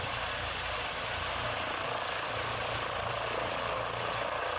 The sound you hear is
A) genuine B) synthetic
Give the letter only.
A